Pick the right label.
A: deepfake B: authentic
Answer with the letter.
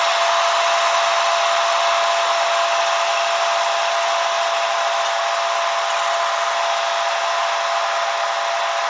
B